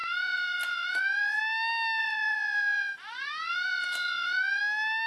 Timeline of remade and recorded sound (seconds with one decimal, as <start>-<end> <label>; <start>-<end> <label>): 0.0-1.4 remade; 1.4-2.0 recorded; 2.0-4.6 remade; 4.6-5.1 recorded